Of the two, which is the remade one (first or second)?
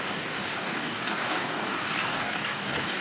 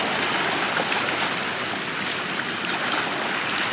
first